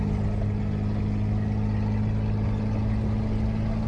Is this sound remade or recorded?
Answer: recorded